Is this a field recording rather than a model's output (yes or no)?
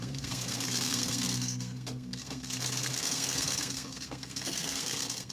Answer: no